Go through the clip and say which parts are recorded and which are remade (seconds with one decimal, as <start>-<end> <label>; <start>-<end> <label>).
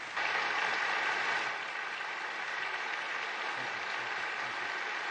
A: 0.0-5.1 recorded